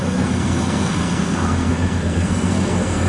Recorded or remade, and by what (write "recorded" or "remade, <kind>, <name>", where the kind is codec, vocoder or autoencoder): remade, codec, SNAC